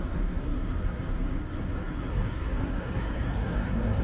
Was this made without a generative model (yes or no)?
no